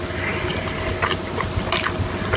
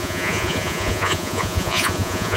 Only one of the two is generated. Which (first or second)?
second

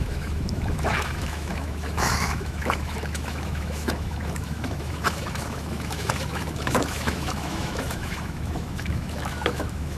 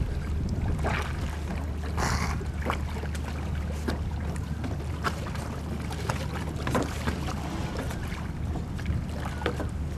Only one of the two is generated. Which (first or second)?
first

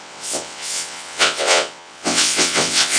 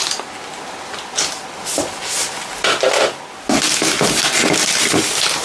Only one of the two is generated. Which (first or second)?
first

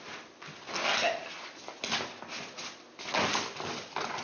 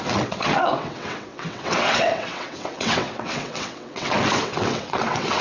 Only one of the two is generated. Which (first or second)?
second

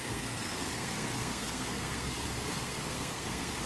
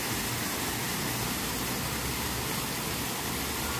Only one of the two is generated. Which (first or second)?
first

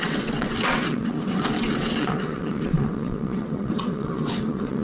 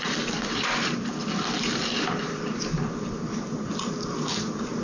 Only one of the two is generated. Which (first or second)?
first